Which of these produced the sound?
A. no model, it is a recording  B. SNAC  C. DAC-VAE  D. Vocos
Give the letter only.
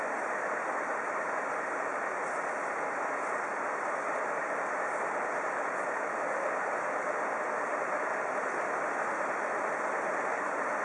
A